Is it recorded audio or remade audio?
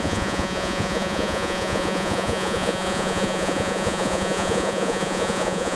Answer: remade